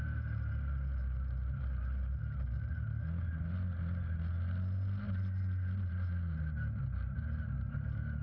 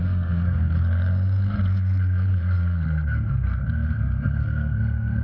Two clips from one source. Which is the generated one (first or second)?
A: second